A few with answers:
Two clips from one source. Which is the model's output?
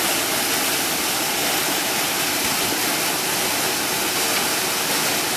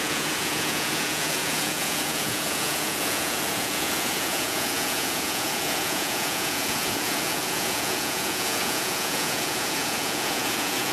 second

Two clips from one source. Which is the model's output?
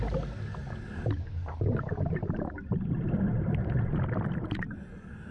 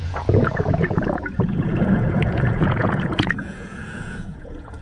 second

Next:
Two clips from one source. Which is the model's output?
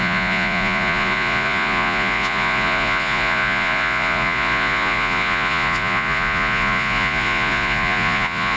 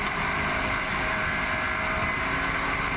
first